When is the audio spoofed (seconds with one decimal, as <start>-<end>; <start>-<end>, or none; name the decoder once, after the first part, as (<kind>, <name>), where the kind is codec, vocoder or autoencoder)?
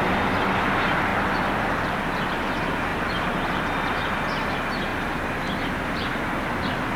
1.1-2.3 (vocoder, BigVGAN v2); 2.9-3.7